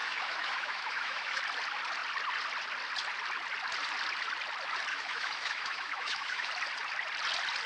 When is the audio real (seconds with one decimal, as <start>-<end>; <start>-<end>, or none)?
1.4-4.9; 6.5-7.7

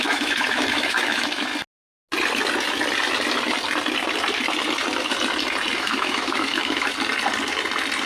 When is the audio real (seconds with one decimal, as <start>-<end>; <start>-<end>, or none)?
1.5-5.8; 6.9-8.1

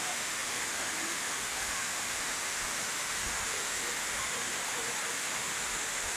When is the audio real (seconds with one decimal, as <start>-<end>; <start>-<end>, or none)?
4.6-5.1

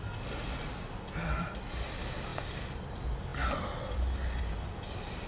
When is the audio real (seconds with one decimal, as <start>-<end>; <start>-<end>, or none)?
0.0-5.3

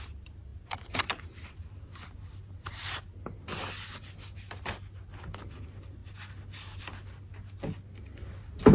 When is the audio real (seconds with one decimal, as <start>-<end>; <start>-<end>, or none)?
0.0-8.7

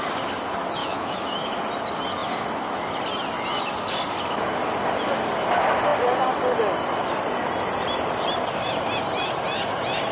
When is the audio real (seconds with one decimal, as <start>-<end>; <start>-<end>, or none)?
0.0-0.8; 1.6-10.1

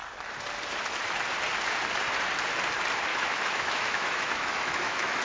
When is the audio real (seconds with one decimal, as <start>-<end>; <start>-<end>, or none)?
0.0-3.1

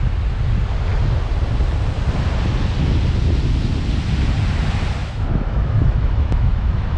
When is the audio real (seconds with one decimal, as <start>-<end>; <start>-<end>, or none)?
0.0-5.0